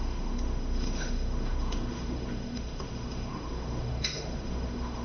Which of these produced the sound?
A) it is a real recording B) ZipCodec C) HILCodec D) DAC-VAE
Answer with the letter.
D